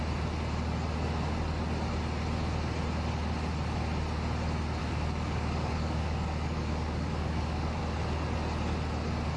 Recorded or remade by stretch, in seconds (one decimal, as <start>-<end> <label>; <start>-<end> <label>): 0.0-4.8 recorded; 4.8-7.8 remade; 7.8-9.4 recorded